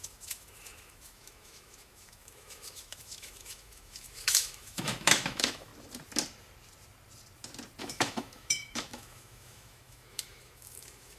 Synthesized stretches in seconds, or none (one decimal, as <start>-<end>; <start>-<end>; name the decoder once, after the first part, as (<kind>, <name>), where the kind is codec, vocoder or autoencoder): 0.0-5.7 (autoencoder, DAC-VAE); 7.8-11.2